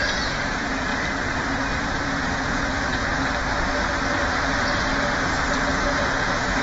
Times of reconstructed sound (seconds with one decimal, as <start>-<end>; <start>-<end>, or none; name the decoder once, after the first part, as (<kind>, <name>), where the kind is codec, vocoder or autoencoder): 0.0-0.9 (vocoder, Vocos); 1.8-3.1; 5.7-6.6